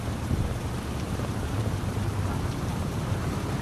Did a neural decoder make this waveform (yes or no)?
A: yes